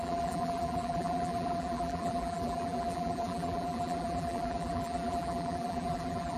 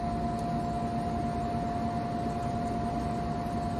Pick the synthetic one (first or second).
first